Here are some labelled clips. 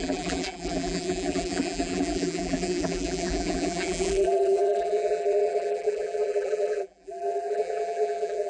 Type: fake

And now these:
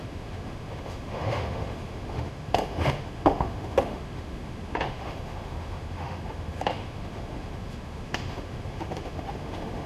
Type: fake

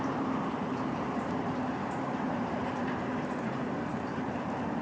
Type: fake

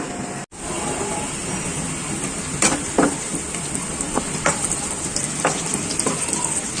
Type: real